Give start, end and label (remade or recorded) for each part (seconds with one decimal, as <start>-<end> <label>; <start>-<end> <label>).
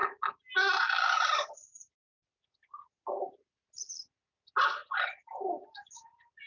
0.0-6.5 recorded